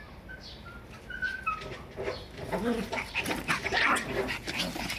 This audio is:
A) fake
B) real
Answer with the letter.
B